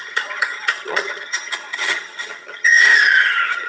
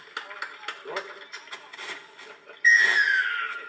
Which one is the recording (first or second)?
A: second